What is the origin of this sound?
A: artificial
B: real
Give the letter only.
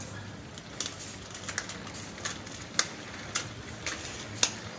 B